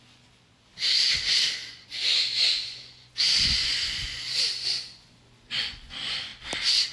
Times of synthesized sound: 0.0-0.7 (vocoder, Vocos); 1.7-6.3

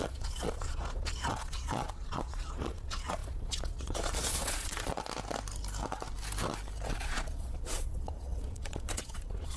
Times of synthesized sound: 0.0-4.9 (vocoder, Vocos); 7.0-9.6